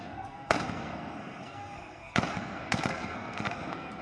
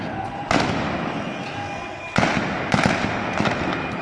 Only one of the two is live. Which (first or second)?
second